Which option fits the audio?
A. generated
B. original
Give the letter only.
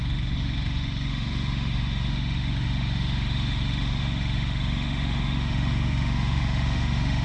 A